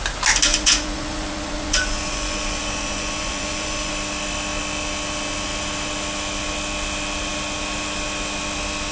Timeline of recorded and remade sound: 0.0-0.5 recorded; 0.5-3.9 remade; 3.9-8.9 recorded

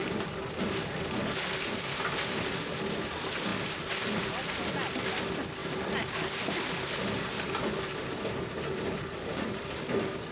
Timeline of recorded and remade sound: 0.0-5.6 recorded; 5.6-9.8 remade; 9.8-10.3 recorded